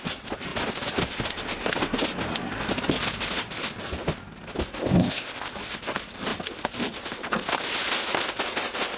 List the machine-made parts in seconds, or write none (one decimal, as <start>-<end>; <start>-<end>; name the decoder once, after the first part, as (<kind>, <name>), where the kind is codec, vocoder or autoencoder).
4.8-5.5 (codec, ZipCodec)